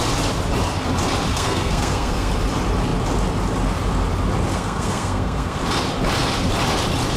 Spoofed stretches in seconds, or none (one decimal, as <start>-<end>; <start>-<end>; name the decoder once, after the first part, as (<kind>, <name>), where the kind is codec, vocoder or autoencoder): 1.3-2.3 (codec, SNAC); 4.5-5.6